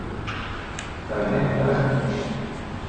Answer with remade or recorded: recorded